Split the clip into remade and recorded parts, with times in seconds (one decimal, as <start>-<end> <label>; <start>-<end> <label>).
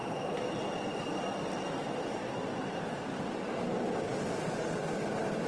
0.0-3.2 remade; 3.2-5.5 recorded